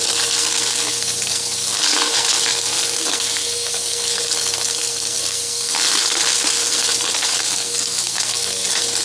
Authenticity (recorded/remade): remade